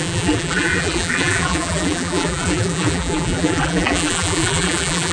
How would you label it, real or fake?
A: fake